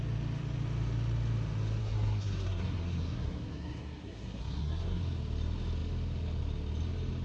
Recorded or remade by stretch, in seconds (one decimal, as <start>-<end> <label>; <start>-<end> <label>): 0.0-1.8 recorded; 1.8-5.0 remade; 5.0-7.2 recorded